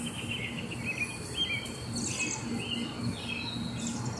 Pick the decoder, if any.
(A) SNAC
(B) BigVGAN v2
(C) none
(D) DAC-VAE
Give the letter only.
C